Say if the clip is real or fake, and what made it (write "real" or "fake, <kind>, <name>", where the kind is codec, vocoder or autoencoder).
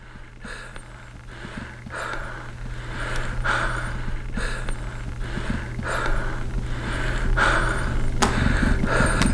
real